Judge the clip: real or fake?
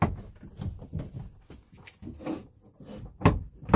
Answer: real